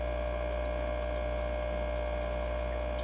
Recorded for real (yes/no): yes